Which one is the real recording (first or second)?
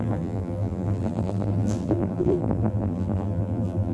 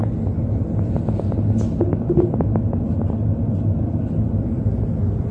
second